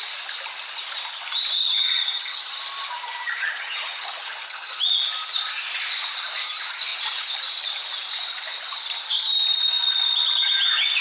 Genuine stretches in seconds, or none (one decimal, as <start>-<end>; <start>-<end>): 0.0-1.6; 2.5-3.4; 4.8-11.0